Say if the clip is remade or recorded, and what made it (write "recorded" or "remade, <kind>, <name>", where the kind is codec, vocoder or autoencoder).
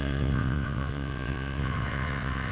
remade, vocoder, WaveNeXt